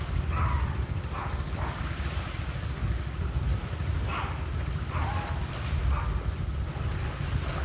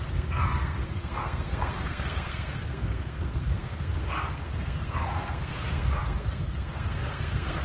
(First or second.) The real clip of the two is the first